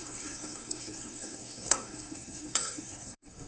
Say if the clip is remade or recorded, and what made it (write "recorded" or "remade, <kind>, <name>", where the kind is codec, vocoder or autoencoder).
remade, codec, SNAC